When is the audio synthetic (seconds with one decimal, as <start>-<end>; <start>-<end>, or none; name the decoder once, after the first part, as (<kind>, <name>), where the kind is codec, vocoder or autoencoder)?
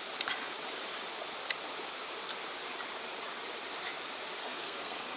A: 4.4-5.2 (codec, SNAC)